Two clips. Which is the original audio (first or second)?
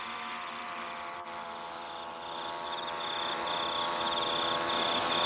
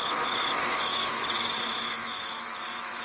first